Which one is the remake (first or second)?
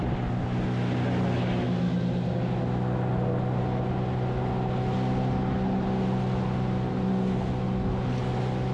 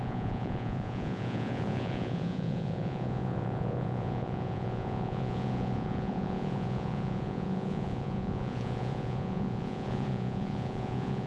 second